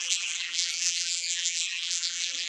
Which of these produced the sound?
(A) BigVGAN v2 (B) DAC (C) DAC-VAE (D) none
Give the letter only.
A